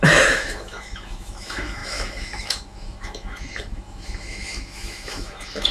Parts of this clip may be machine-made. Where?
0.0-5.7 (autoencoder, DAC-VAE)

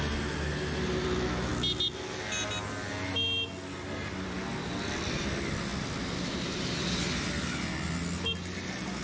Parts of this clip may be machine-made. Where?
none

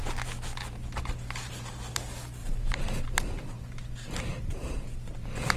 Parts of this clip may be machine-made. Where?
2.4-5.6 (vocoder, BigVGAN v2)

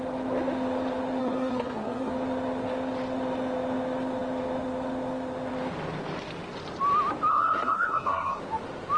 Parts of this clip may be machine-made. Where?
1.2-2.1 (codec, SNAC); 7.3-8.4

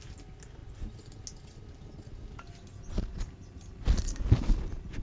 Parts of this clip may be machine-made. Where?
none

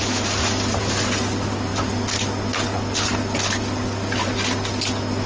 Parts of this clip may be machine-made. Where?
none